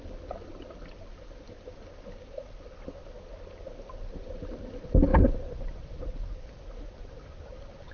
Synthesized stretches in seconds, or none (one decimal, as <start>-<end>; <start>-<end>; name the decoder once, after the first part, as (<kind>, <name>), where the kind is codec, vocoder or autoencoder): none